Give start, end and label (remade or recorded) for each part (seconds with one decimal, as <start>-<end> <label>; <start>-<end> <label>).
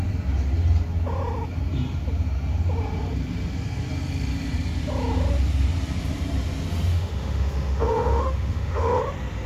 0.0-6.9 recorded; 6.9-9.0 remade; 9.0-9.5 recorded